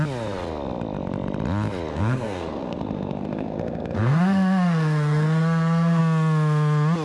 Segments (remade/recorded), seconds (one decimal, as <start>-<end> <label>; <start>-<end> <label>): 0.0-1.9 recorded; 1.9-6.0 remade; 6.0-7.0 recorded

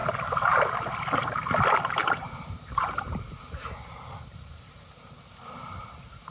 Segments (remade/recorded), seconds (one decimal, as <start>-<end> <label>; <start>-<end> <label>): 0.0-2.0 recorded; 2.0-5.8 remade; 5.8-6.3 recorded

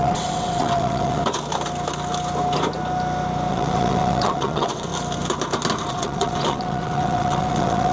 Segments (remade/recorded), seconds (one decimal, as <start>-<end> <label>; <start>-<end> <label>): 0.0-1.2 remade; 1.2-3.5 recorded; 3.5-4.9 remade; 4.9-5.9 recorded; 5.9-7.9 remade